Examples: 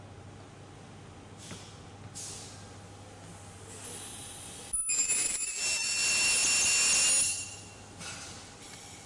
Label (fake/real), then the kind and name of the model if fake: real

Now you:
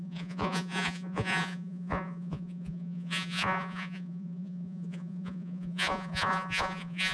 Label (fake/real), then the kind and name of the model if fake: fake, vocoder, Vocos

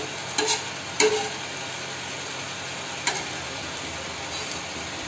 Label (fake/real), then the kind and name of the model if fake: real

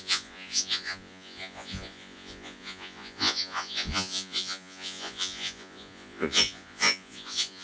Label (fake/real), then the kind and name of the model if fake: fake, vocoder, Vocos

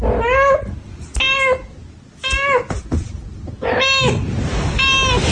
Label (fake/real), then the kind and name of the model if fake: real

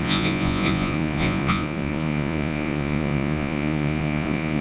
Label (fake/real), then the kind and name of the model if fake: fake, vocoder, Vocos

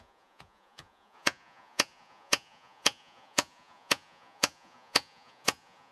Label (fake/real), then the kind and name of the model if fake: fake, vocoder, Vocos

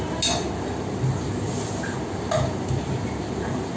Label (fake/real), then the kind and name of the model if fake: real